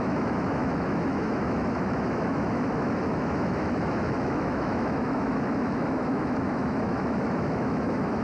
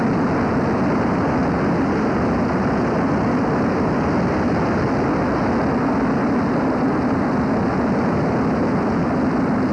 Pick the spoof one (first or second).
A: first